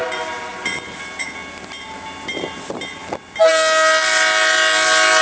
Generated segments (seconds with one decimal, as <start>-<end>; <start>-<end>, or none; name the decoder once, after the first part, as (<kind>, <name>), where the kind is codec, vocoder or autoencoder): none